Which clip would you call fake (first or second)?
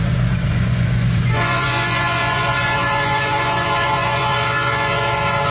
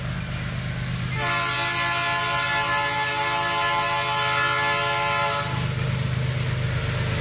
first